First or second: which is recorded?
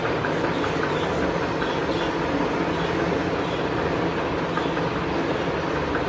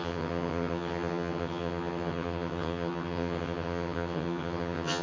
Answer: first